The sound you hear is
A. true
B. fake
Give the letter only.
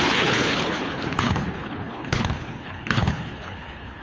B